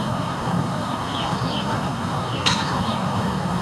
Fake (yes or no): yes